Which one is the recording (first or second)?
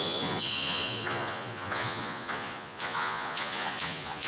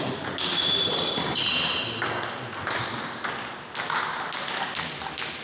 second